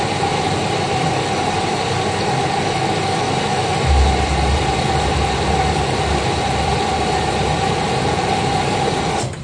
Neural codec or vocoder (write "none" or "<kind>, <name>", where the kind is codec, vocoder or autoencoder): none